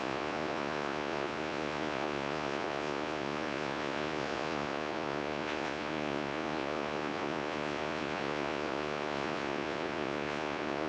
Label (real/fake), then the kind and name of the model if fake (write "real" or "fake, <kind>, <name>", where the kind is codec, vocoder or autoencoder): fake, vocoder, Vocos